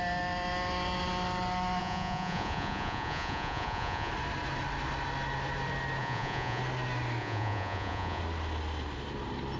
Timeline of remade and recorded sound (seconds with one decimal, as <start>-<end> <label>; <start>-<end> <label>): 0.0-1.8 recorded; 1.8-4.1 remade; 4.1-6.0 recorded; 6.0-6.6 remade; 6.6-7.2 recorded; 7.2-8.2 remade; 8.2-9.6 recorded